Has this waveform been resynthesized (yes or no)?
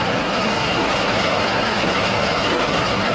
yes